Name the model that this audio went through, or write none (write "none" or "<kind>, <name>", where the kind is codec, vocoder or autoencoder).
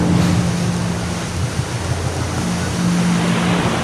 none